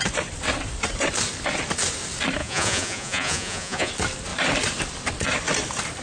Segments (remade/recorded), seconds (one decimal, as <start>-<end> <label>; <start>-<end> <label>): 0.0-2.4 recorded; 2.4-3.9 remade; 3.9-6.0 recorded

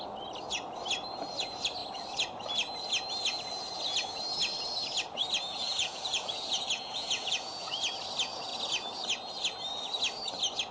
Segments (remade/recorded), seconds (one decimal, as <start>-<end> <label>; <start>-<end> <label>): 0.0-5.5 recorded; 5.5-7.8 remade; 7.8-10.7 recorded

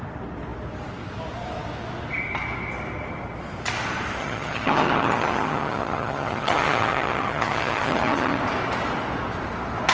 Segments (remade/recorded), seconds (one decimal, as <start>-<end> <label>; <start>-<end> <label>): 0.0-4.2 recorded; 4.2-8.4 remade; 8.4-9.9 recorded

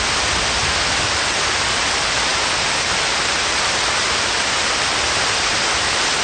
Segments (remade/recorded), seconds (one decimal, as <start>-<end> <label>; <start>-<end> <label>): 0.0-6.2 recorded